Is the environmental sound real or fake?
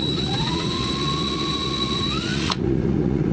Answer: fake